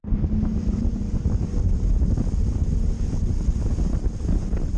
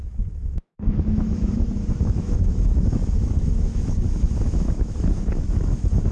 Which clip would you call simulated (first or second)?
second